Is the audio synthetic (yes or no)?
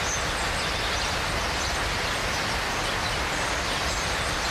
no